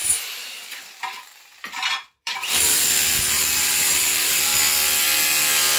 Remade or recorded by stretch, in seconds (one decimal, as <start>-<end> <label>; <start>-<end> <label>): 0.0-4.5 remade; 4.5-5.8 recorded